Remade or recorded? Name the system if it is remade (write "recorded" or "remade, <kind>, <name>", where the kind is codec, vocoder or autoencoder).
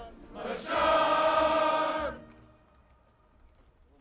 recorded